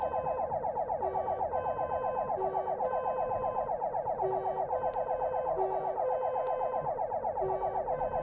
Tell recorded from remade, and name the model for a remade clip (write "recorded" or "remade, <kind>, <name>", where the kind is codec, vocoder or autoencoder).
recorded